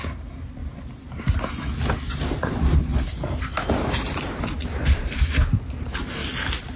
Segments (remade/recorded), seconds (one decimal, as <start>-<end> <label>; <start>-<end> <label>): 0.0-0.6 remade; 0.6-2.2 recorded; 2.2-2.9 remade; 2.9-3.7 recorded; 3.7-6.2 remade; 6.2-6.8 recorded